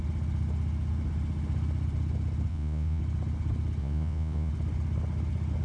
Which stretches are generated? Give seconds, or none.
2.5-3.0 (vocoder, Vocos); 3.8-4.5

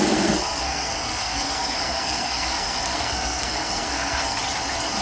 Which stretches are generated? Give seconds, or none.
0.0-4.4 (codec, SNAC)

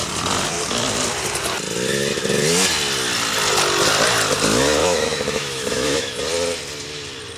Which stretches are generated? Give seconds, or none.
4.8-6.2 (autoencoder, DAC-VAE)

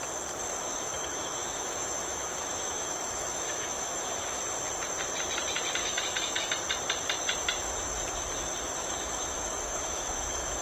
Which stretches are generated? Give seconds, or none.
0.6-4.4 (autoencoder, DAC-VAE); 5.8-6.5; 8.8-10.6

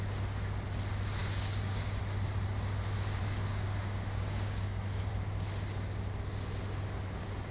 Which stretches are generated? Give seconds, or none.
1.2-2.0 (codec, DAC); 3.2-5.1

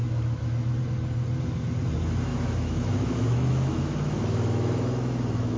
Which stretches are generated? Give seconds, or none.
0.0-0.8 (autoencoder, DAC-VAE); 2.3-5.6

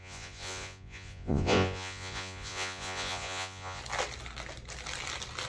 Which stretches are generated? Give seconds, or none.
0.0-3.8 (vocoder, Vocos)

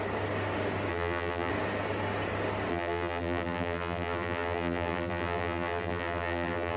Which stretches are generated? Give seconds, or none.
0.9-1.5 (vocoder, BigVGAN v2); 2.7-6.8